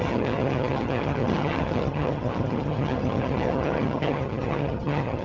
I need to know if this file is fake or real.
fake